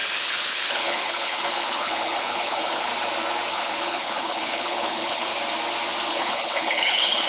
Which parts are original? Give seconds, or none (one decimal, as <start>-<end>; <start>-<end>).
2.9-3.5; 5.3-6.1